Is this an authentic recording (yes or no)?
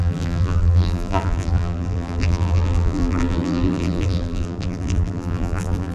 no